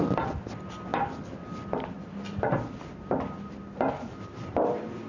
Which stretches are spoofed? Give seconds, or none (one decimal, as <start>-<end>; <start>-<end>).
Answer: none